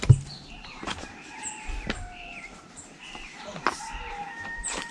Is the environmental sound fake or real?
fake